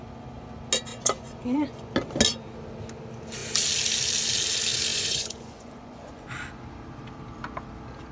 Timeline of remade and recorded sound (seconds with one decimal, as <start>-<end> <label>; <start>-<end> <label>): 0.0-0.9 recorded; 0.9-1.9 remade; 1.9-4.9 recorded; 4.9-6.3 remade; 6.3-8.1 recorded